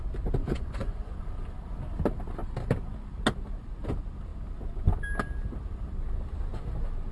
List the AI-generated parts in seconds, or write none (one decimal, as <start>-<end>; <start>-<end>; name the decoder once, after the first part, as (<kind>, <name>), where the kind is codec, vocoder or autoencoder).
0.4-1.2 (vocoder, Vocos)